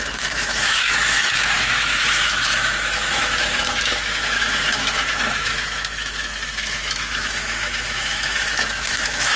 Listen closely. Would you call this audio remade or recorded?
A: remade